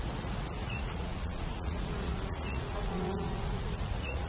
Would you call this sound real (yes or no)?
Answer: no